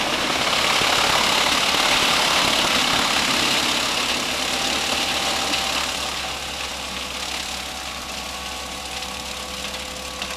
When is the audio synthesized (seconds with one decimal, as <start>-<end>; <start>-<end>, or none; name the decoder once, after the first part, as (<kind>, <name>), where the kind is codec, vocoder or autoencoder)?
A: none